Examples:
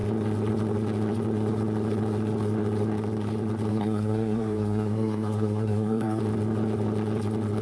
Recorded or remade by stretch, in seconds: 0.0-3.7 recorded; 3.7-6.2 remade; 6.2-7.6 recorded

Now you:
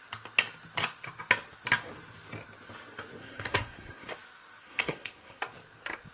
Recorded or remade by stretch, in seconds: 0.0-3.2 recorded; 3.2-4.1 remade; 4.1-4.6 recorded; 4.6-5.4 remade; 5.4-6.1 recorded

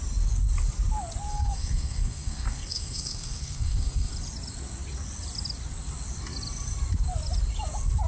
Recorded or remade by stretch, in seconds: 0.0-1.3 recorded; 1.3-4.1 remade; 4.1-8.1 recorded

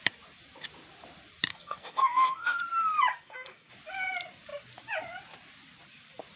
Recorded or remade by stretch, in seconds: 0.0-1.5 recorded; 1.5-2.6 remade; 2.6-3.1 recorded; 3.1-3.7 remade; 3.7-6.4 recorded

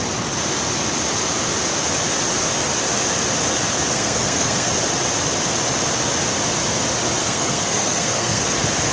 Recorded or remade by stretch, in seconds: 0.0-3.9 recorded; 3.9-4.7 remade; 4.7-7.2 recorded; 7.2-8.4 remade; 8.4-8.9 recorded